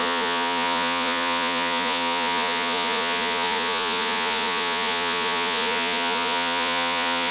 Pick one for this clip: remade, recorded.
remade